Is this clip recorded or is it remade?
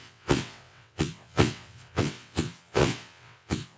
remade